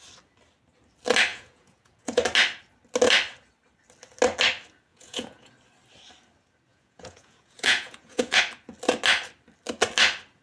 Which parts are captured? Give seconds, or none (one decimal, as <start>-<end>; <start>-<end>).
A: 0.0-1.3; 2.2-4.9; 5.5-6.7; 8.4-10.4